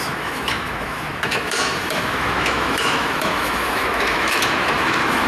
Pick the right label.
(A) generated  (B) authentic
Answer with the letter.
A